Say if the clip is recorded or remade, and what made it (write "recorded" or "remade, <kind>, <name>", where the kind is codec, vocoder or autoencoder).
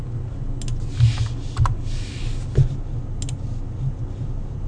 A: recorded